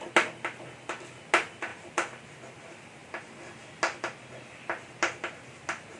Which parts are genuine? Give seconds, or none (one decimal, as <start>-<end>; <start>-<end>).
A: 0.0-6.0